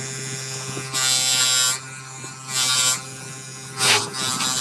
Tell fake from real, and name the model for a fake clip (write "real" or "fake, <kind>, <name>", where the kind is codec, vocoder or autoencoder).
real